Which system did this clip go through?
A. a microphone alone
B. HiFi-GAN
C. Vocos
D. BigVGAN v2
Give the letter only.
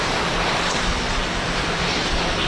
A